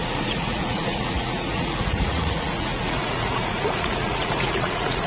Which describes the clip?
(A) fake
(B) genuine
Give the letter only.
A